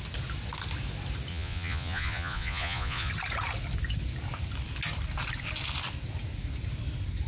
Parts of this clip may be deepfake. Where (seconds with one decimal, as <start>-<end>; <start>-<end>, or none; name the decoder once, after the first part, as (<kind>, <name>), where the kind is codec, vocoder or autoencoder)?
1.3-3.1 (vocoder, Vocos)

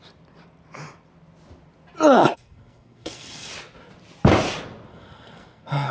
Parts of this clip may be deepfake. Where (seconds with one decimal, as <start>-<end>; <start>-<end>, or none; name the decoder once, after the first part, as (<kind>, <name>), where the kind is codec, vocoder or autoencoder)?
2.2-3.5 (codec, SNAC); 4.9-5.9

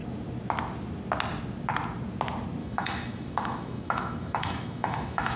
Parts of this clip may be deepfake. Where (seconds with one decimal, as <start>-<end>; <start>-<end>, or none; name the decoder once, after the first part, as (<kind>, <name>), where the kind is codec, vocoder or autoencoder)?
2.6-5.4 (autoencoder, DAC-VAE)

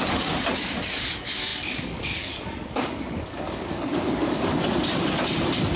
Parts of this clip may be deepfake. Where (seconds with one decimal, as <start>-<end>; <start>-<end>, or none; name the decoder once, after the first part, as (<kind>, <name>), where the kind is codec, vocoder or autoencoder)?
0.0-4.5 (codec, DAC)

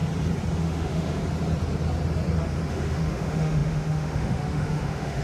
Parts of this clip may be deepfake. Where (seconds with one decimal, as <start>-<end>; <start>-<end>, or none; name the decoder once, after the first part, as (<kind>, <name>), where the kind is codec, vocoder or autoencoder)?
0.6-1.2 (autoencoder, DAC-VAE); 2.7-5.2